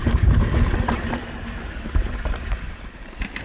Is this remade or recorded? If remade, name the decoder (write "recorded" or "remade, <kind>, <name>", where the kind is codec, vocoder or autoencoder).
remade, vocoder, BigVGAN v2